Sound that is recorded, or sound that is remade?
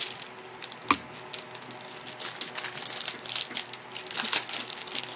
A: recorded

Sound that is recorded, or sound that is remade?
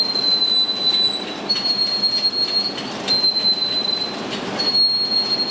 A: recorded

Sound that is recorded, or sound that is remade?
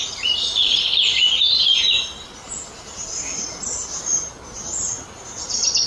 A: recorded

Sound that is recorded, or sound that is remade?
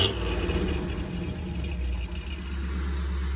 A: recorded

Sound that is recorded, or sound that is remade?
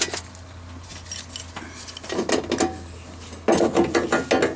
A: recorded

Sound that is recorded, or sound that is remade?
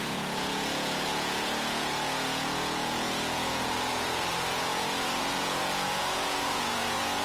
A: remade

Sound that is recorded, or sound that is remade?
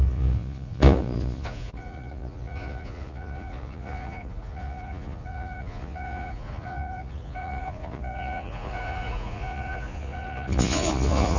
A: remade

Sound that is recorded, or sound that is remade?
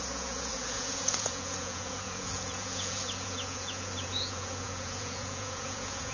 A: remade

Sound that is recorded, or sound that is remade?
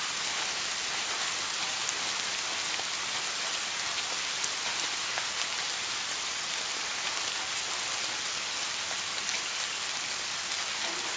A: recorded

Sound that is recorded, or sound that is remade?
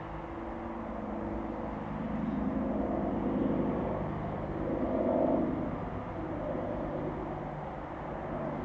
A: recorded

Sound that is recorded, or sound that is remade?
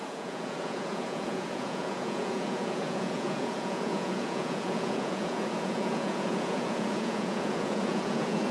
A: remade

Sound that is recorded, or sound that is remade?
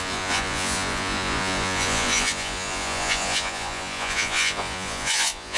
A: remade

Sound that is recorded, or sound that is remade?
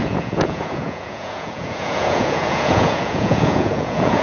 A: remade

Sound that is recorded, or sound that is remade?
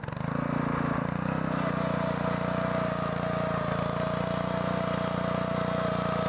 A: recorded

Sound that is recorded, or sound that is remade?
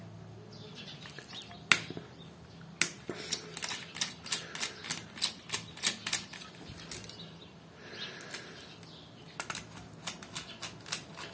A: recorded